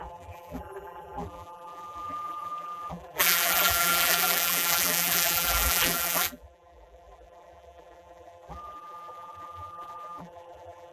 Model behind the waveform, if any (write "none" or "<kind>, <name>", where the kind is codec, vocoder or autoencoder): vocoder, BigVGAN v2